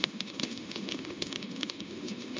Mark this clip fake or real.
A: fake